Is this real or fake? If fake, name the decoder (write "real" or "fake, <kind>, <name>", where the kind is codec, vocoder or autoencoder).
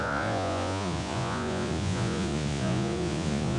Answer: fake, vocoder, Vocos